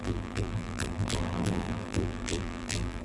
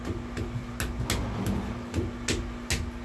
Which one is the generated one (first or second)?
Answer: first